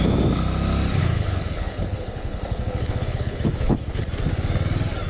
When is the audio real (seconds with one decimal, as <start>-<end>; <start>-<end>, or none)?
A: 0.0-1.0; 4.1-5.1